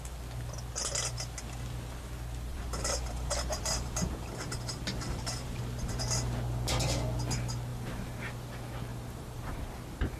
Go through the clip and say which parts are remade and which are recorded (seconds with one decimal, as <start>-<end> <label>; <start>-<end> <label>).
0.0-2.5 recorded; 2.5-5.6 remade; 5.6-7.7 recorded; 7.7-8.2 remade; 8.2-8.9 recorded; 8.9-9.5 remade; 9.5-10.2 recorded